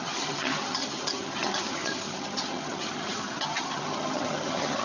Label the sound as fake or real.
fake